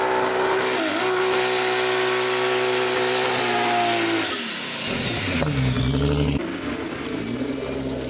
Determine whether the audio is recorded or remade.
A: recorded